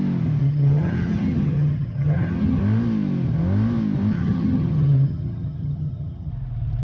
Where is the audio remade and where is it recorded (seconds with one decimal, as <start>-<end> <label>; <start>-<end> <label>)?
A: 0.0-0.4 recorded; 0.4-2.6 remade; 2.6-4.1 recorded; 4.1-6.3 remade; 6.3-6.8 recorded